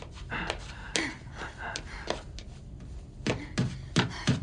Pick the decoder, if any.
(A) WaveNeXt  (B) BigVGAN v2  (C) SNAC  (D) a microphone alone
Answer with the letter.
D